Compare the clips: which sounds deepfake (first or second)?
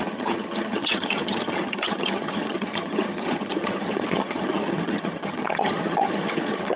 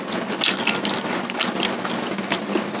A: first